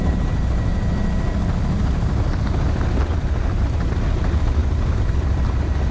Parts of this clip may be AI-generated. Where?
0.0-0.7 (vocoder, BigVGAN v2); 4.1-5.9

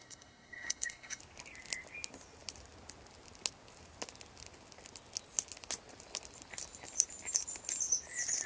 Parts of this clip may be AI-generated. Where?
0.0-1.2 (codec, SNAC)

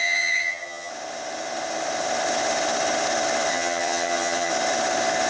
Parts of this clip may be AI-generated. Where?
0.0-0.9 (vocoder, HiFi-GAN); 3.5-4.5

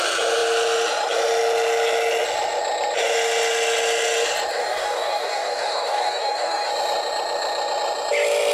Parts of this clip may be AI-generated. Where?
4.5-6.7 (codec, DAC)

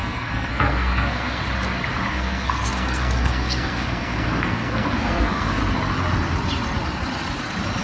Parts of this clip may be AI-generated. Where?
0.0-1.4 (codec, SNAC); 2.1-5.6

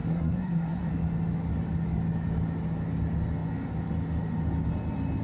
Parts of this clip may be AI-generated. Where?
0.0-0.9 (codec, SNAC)

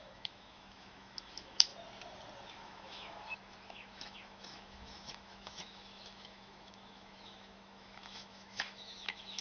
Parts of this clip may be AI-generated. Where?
0.0-1.7 (autoencoder, DAC-VAE); 2.5-9.4

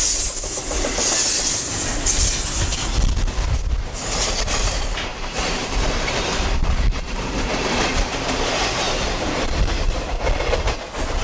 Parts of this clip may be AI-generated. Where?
5.1-10.2 (vocoder, BigVGAN v2)